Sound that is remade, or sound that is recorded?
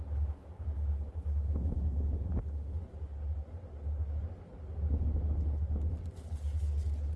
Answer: recorded